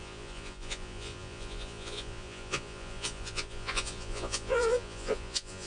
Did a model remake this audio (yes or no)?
yes